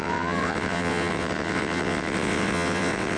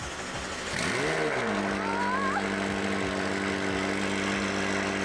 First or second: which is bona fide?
second